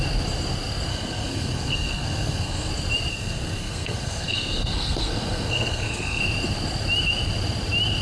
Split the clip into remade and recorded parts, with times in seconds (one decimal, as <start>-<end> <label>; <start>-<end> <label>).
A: 0.0-0.9 recorded; 0.9-2.7 remade; 2.7-3.1 recorded; 3.1-6.2 remade; 6.2-8.0 recorded